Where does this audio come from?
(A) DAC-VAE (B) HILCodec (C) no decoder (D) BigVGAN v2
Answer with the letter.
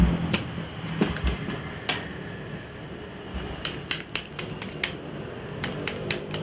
C